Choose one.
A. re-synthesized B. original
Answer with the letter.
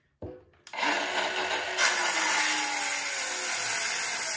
B